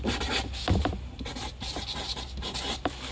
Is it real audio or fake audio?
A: real